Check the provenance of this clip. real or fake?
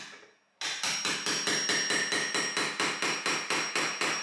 real